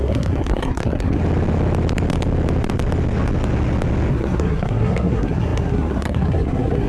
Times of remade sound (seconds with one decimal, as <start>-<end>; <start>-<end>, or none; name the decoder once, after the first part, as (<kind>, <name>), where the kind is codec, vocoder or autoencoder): 0.0-1.2 (codec, SNAC); 4.1-6.9